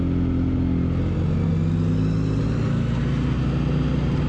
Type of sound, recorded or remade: recorded